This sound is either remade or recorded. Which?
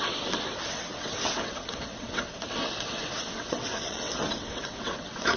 remade